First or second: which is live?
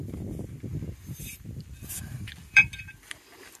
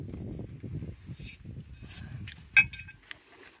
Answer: second